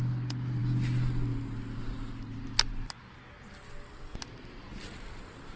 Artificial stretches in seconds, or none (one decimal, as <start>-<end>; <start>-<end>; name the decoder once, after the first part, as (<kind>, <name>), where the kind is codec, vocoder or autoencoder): none